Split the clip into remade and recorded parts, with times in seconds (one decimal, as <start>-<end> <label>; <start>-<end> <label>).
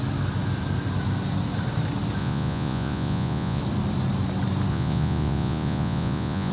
0.0-2.2 recorded; 2.2-3.6 remade; 3.6-4.7 recorded; 4.7-6.5 remade